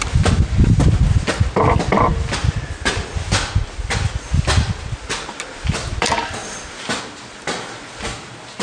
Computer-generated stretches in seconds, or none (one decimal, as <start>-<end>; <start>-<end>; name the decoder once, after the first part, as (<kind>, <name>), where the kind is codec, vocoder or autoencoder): 6.4-7.0 (vocoder, BigVGAN v2)

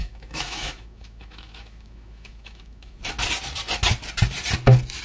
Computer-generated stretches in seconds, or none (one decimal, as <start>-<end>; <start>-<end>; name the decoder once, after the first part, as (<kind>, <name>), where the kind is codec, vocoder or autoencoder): 0.0-3.0 (autoencoder, DAC-VAE)

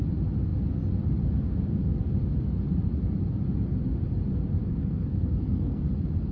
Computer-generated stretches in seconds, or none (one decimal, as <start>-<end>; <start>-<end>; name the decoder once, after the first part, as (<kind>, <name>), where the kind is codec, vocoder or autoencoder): 4.7-5.8 (codec, SNAC)

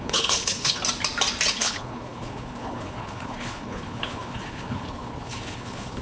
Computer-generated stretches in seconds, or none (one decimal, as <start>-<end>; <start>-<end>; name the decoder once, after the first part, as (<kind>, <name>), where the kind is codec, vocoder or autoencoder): 0.0-0.8 (codec, HILCodec); 1.5-6.0

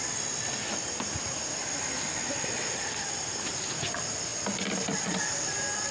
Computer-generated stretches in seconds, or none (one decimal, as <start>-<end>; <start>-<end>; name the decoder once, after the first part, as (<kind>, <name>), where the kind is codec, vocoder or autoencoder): none